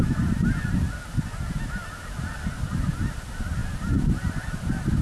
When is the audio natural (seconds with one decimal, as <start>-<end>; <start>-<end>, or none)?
0.0-5.0